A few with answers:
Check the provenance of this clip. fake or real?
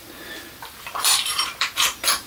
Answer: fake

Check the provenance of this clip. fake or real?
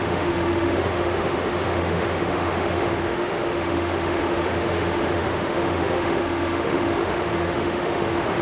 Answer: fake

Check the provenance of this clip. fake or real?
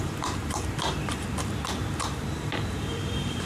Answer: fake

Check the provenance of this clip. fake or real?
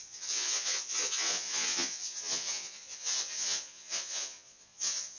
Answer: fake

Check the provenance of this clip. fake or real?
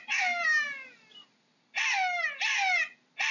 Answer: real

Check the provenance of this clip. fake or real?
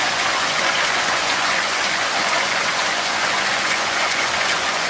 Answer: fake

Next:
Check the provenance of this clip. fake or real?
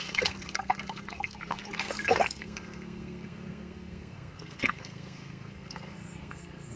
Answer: fake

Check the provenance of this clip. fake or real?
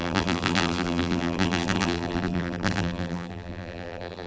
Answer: fake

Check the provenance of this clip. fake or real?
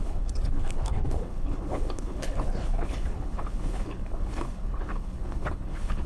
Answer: fake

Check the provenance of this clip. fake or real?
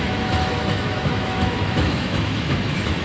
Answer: fake